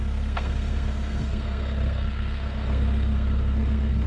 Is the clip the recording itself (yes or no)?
no